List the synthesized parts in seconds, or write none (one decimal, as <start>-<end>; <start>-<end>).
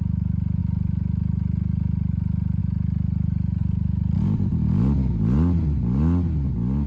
3.6-4.5